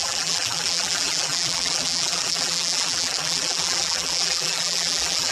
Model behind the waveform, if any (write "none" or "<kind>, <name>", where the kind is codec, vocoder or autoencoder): vocoder, BigVGAN v2